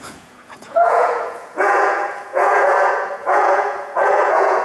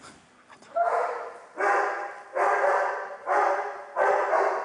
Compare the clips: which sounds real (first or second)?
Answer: second